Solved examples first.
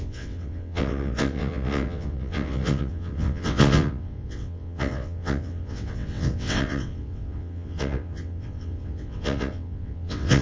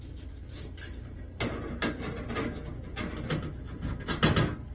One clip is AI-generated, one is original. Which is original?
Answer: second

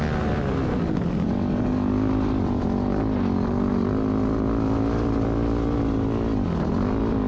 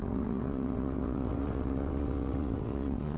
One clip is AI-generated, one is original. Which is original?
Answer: first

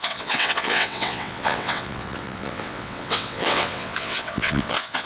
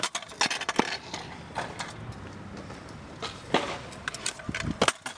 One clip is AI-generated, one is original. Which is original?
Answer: second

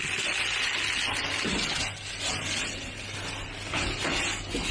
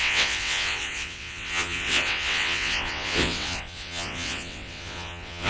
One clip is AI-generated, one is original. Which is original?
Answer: first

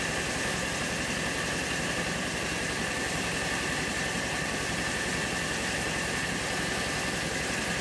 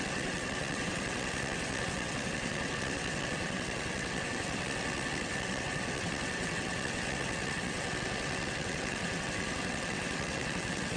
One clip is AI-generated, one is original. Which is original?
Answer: first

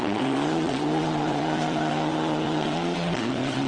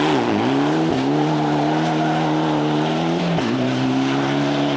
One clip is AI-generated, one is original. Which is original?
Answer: second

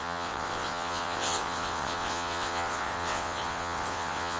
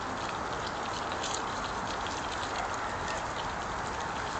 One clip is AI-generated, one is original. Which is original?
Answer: second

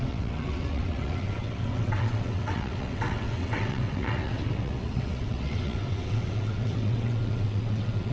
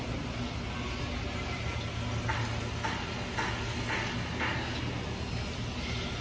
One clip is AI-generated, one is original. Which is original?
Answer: second